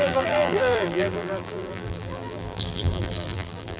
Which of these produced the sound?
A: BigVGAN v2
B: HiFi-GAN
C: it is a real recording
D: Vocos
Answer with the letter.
A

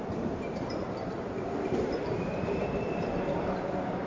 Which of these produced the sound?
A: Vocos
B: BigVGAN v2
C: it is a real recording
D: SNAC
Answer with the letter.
B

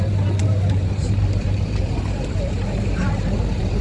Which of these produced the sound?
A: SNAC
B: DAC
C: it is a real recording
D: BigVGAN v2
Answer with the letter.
D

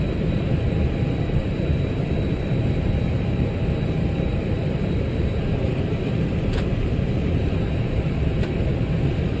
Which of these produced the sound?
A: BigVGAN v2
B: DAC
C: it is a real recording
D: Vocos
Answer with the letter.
A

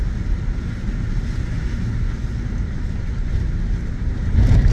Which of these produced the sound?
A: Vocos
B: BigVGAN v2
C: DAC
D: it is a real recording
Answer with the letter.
D